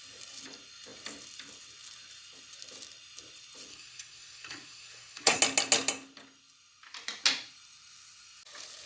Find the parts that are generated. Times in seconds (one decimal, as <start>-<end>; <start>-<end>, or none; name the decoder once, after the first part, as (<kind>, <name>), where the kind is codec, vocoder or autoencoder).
3.7-5.4 (codec, SNAC)